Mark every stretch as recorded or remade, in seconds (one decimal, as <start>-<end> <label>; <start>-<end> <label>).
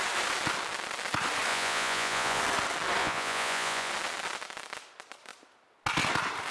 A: 0.0-1.5 recorded; 1.5-2.4 remade; 2.4-3.0 recorded; 3.0-3.9 remade; 3.9-6.5 recorded